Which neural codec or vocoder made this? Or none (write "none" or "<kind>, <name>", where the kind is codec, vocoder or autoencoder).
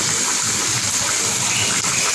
none